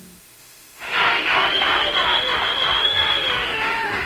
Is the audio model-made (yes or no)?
yes